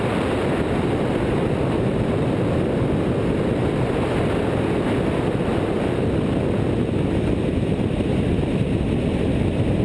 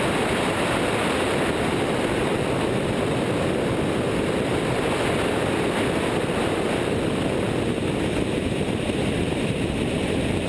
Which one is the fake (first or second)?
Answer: second